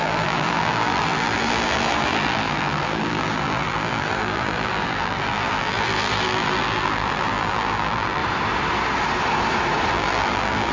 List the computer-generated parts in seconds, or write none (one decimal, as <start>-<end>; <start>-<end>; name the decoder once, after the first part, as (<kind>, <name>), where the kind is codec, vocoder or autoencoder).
0.0-8.2 (vocoder, BigVGAN v2); 9.9-10.7